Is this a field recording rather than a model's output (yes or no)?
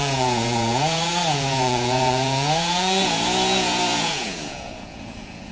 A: no